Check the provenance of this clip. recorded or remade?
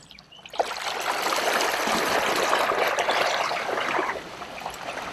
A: recorded